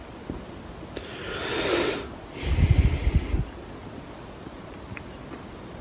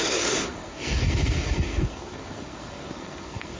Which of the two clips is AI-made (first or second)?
second